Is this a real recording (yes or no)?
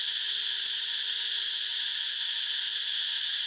yes